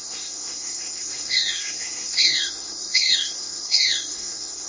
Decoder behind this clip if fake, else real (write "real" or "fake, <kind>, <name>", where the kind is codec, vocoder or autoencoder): fake, codec, SNAC